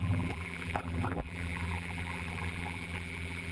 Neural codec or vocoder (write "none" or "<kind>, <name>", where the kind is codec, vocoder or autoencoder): vocoder, BigVGAN v2